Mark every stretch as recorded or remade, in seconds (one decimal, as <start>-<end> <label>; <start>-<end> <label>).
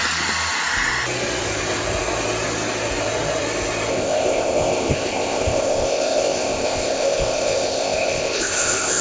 0.0-3.9 recorded; 3.9-9.0 remade